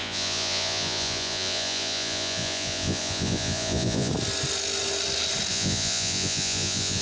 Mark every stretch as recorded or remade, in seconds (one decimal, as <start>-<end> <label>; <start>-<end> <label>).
0.0-4.1 remade; 4.1-5.5 recorded; 5.5-7.0 remade